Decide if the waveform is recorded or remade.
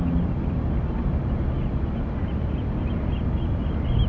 recorded